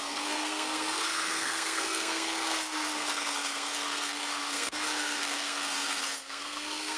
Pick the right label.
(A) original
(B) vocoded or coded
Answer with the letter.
B